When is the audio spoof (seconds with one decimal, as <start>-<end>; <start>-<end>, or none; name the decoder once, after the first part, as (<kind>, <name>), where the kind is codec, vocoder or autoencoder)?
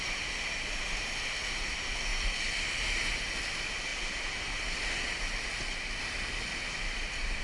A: none